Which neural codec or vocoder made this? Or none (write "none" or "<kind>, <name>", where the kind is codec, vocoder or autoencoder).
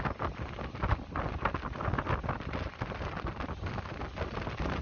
none